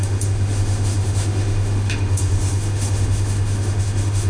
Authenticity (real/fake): fake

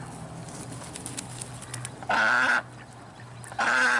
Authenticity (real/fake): real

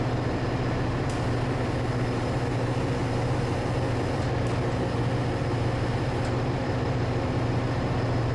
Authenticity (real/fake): real